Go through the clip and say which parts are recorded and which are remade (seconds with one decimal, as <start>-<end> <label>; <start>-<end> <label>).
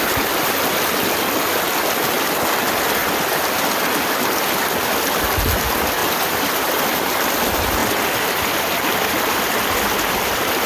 0.0-6.0 recorded; 6.0-6.8 remade; 6.8-10.7 recorded